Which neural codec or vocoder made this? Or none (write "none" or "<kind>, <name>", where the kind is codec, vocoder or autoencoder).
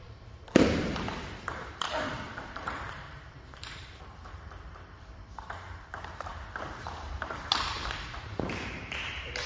vocoder, BigVGAN v2